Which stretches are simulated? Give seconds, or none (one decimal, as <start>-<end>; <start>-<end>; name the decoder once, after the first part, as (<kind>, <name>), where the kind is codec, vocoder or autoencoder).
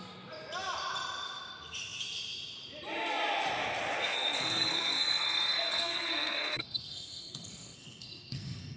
4.0-8.8 (codec, SNAC)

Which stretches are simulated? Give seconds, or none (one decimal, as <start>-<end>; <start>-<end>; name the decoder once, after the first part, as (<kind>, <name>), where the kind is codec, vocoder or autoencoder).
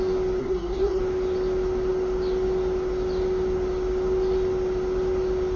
0.4-1.0 (codec, SNAC)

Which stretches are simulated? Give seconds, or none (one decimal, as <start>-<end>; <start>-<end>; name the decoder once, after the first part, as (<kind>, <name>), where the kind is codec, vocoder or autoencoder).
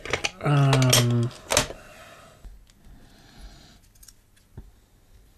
none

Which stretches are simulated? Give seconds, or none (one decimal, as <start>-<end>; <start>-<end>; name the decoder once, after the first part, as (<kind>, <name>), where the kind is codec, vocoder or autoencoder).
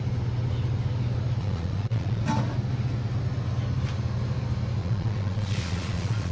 1.4-2.2 (vocoder, Vocos); 4.8-6.3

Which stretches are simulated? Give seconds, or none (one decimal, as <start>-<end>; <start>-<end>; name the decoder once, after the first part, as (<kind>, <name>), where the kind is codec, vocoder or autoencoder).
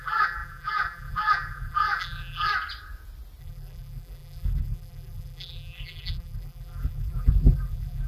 0.0-2.5 (vocoder, BigVGAN v2); 3.4-8.1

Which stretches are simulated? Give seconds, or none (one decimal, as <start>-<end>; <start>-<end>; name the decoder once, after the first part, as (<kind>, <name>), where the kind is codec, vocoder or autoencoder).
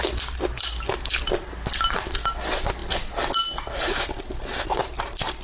none